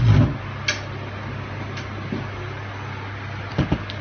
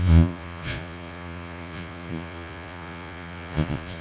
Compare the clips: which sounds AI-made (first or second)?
second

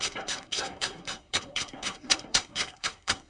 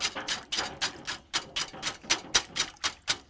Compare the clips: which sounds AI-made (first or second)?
first